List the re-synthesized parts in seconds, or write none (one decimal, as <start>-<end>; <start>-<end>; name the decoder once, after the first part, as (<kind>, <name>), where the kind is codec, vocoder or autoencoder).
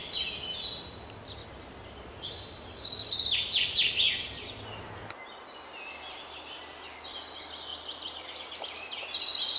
7.7-9.0 (vocoder, BigVGAN v2)